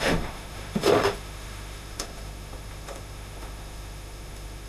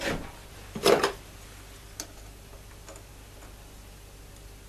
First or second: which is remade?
first